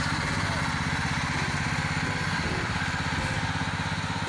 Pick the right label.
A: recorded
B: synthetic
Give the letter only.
A